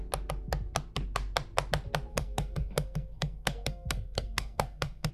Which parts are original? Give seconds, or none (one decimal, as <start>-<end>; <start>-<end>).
0.0-2.1

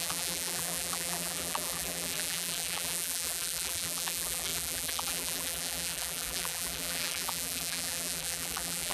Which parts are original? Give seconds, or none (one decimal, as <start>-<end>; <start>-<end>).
none

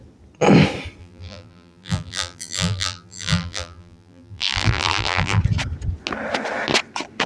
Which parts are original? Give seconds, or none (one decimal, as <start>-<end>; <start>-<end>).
0.0-1.0; 5.4-7.3

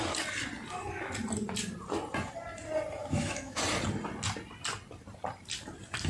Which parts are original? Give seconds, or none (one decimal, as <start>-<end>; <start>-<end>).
0.0-3.0; 3.6-6.1

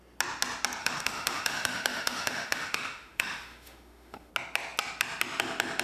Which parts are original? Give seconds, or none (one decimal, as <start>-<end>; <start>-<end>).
0.0-0.8; 4.3-5.8